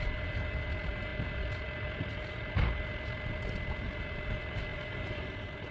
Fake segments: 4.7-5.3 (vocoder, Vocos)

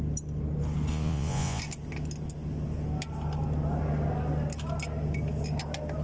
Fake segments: 0.9-1.6 (vocoder, Vocos)

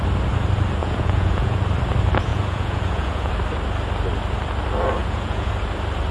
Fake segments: 0.8-1.6 (vocoder, Vocos); 2.3-3.3; 5.0-5.5

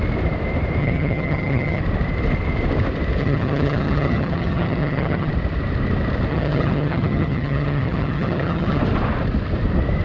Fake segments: 0.8-1.8 (vocoder, HiFi-GAN); 3.2-5.3; 6.3-8.8

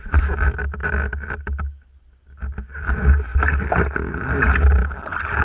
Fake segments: none

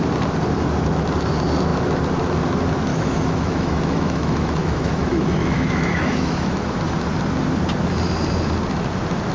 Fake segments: 2.9-6.8 (autoencoder, DAC-VAE)

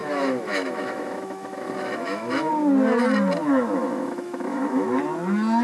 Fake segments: 0.0-2.5 (autoencoder, DAC-VAE); 3.4-5.0